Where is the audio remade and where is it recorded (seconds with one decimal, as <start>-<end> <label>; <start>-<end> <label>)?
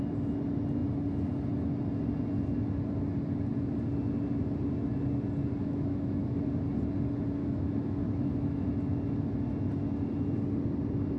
0.0-5.6 recorded; 5.6-6.4 remade; 6.4-7.4 recorded; 7.4-8.7 remade; 8.7-11.2 recorded